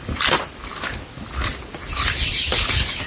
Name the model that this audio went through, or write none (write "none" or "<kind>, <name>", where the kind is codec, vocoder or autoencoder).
vocoder, BigVGAN v2